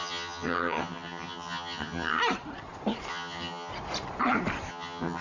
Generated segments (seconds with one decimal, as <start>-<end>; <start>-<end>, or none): 0.0-2.2; 3.1-3.7; 4.7-5.2